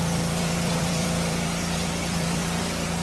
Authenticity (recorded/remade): remade